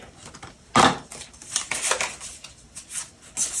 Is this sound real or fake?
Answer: real